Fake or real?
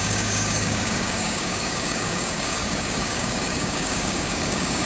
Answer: fake